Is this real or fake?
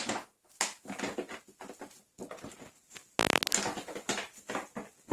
real